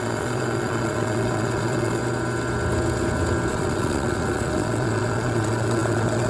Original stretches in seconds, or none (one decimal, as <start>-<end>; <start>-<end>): 2.0-3.5

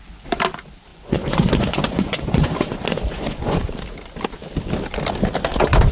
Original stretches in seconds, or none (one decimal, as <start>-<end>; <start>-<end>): 0.0-0.9; 3.7-5.9

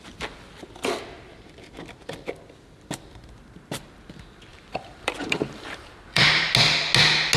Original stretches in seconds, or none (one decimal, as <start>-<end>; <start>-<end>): 0.0-4.5; 6.5-7.4

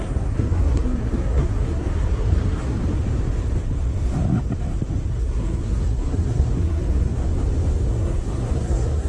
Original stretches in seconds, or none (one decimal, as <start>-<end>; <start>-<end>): 2.8-5.1; 7.2-7.9

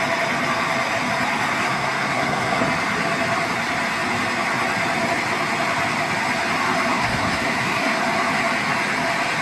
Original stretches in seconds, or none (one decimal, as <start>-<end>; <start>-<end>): 0.0-1.6; 2.6-6.9; 8.0-9.4

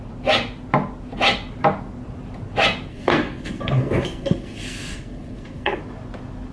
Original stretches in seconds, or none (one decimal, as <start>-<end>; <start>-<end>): 0.0-2.9; 5.8-6.5

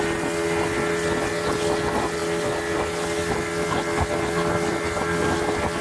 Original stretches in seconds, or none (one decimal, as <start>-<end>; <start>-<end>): 0.0-5.8

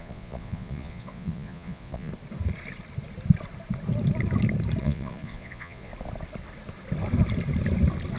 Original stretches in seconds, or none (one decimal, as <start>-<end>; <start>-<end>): 2.1-4.8; 5.9-8.2